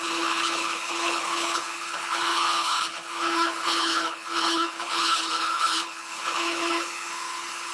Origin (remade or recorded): remade